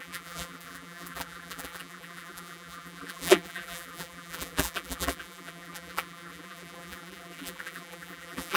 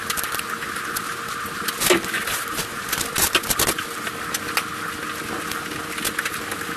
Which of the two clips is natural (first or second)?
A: second